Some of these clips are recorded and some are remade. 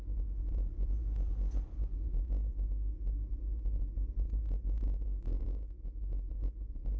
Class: recorded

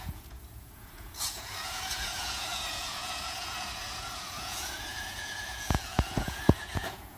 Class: remade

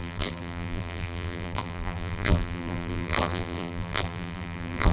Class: remade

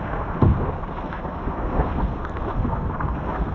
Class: remade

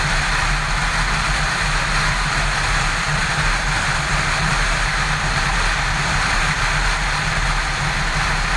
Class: recorded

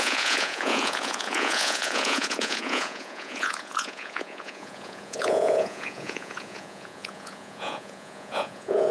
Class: remade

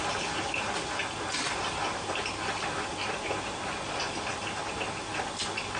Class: recorded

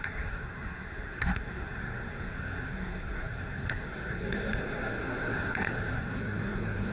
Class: remade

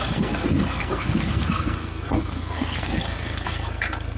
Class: remade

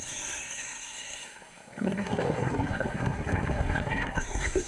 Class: remade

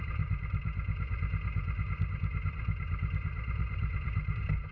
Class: remade